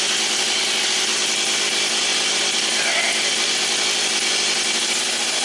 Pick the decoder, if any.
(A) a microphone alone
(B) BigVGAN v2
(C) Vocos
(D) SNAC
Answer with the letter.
A